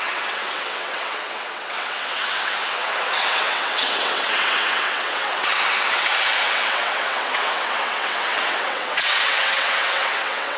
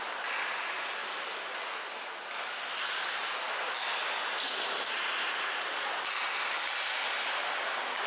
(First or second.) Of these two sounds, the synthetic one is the first